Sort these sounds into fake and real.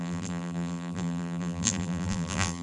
fake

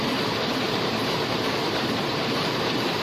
fake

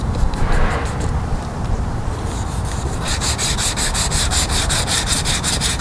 fake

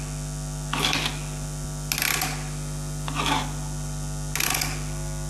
real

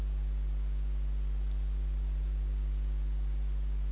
real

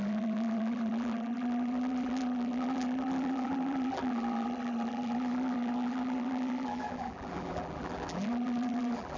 fake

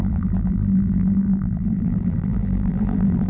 fake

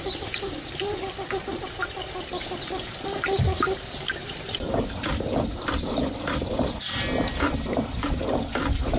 fake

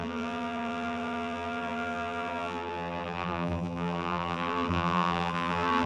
fake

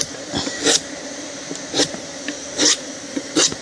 real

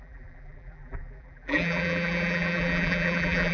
fake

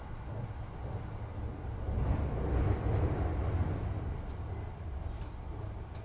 real